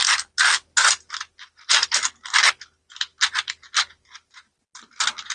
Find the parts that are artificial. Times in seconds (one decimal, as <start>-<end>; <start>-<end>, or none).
none